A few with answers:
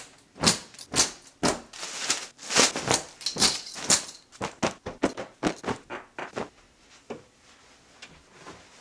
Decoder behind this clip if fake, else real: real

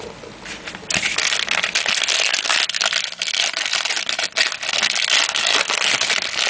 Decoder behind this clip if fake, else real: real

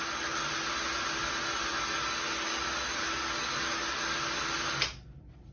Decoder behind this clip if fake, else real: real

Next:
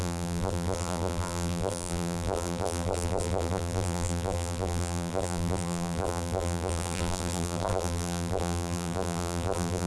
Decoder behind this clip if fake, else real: fake, vocoder, BigVGAN v2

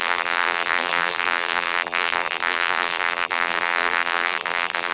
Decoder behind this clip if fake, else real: fake, vocoder, BigVGAN v2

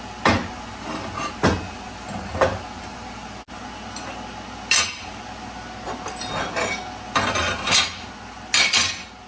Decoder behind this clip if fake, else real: real